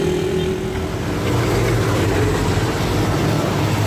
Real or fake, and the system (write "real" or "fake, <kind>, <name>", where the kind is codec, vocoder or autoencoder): real